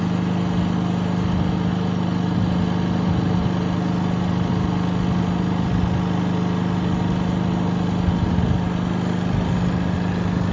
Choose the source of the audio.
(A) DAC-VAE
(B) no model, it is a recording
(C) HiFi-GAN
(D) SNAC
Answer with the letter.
B